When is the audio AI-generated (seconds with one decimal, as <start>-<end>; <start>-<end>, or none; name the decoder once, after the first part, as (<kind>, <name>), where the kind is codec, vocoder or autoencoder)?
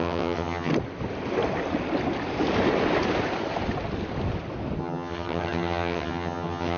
0.0-0.7 (vocoder, HiFi-GAN); 4.8-6.8